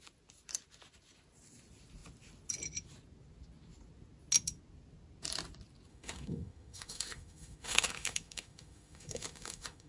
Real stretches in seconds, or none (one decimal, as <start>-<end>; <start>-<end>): 0.0-5.9